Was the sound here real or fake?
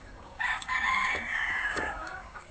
fake